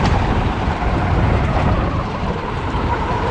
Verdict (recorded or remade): remade